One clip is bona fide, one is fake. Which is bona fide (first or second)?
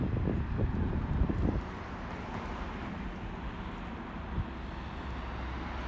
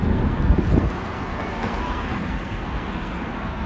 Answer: first